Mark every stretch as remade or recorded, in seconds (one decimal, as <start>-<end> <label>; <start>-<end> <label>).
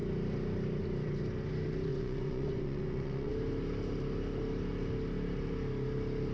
0.0-1.9 recorded; 1.9-3.3 remade; 3.3-6.3 recorded